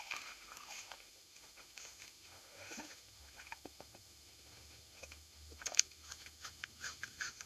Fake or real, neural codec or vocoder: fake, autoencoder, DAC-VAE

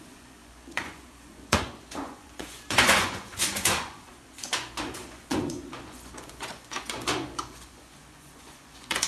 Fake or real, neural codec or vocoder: fake, vocoder, Vocos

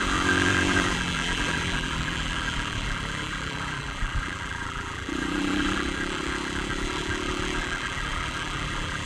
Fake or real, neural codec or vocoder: fake, vocoder, BigVGAN v2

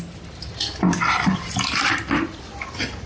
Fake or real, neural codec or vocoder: real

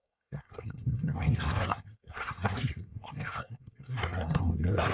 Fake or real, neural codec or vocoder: fake, codec, SNAC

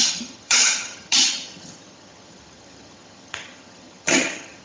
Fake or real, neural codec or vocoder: fake, vocoder, HiFi-GAN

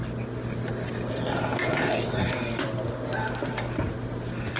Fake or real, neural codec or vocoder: real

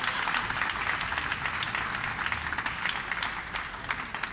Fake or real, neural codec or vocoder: real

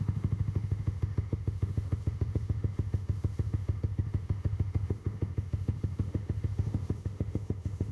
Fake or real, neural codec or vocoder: fake, autoencoder, DAC-VAE